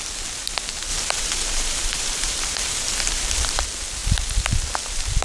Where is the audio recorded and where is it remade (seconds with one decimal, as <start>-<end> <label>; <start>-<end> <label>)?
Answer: 0.0-0.9 recorded; 0.9-3.6 remade; 3.6-5.2 recorded